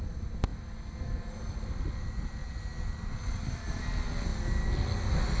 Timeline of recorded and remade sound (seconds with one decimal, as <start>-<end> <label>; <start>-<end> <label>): 0.0-5.4 recorded